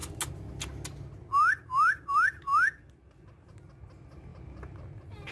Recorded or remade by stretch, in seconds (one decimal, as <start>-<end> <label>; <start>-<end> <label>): 0.0-5.3 recorded